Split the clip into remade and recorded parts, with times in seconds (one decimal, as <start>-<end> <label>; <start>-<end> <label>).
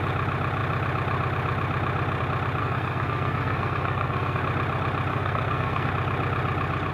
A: 0.0-2.6 recorded; 2.6-4.4 remade; 4.4-5.1 recorded; 5.1-5.9 remade; 5.9-6.9 recorded